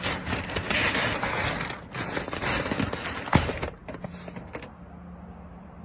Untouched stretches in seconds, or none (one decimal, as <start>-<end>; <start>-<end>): 0.0-5.8